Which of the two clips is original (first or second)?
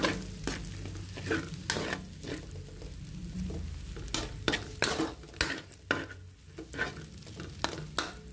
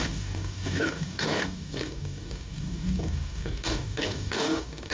first